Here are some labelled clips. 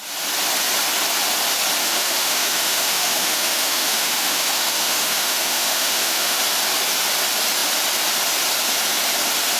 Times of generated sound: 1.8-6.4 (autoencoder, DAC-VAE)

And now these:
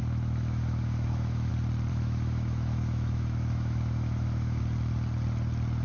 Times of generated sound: 0.0-1.5 (autoencoder, DAC-VAE); 1.9-4.6